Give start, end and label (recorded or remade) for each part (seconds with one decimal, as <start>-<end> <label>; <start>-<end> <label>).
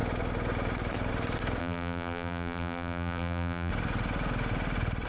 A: 0.0-1.6 recorded; 1.6-3.7 remade; 3.7-5.1 recorded